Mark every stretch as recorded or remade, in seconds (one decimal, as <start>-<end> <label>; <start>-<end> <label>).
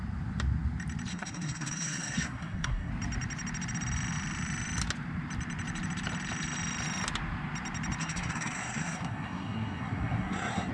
0.0-1.1 recorded; 1.1-2.9 remade; 2.9-8.0 recorded; 8.0-10.7 remade